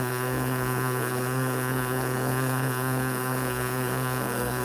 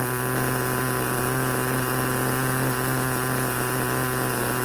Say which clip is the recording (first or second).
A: second